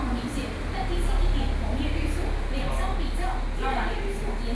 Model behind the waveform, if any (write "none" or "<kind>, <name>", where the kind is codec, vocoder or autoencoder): none